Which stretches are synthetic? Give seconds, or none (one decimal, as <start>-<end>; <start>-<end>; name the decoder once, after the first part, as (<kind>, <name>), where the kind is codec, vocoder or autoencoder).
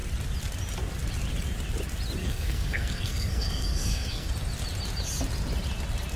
2.2-4.3 (codec, SNAC)